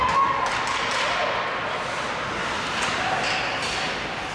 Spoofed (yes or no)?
no